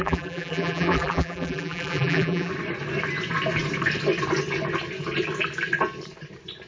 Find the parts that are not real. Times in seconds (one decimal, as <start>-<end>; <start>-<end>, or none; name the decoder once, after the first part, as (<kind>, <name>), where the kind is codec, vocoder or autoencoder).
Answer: 0.0-2.5 (vocoder, BigVGAN v2)